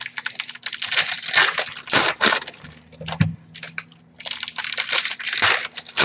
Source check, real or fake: real